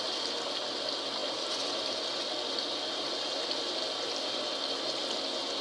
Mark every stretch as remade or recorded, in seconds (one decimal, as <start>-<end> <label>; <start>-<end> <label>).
0.0-5.6 recorded